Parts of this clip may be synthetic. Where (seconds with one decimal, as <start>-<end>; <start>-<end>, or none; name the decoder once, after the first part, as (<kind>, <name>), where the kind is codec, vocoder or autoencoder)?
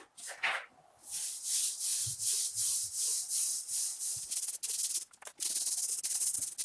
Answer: none